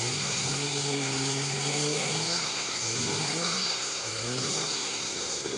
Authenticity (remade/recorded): remade